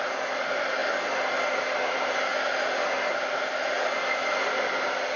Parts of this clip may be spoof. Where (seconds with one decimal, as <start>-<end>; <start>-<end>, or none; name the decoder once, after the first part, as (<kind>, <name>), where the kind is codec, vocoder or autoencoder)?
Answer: none